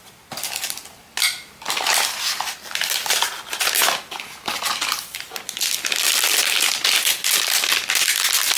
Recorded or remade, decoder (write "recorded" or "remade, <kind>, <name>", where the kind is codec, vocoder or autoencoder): recorded